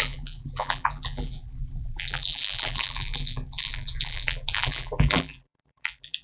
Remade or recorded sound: remade